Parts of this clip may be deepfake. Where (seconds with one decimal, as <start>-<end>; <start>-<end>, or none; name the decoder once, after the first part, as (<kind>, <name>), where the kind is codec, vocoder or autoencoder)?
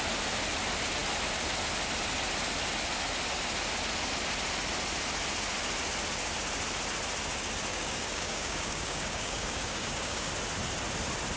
7.7-10.3 (codec, DAC)